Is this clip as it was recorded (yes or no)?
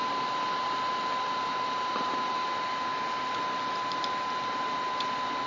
yes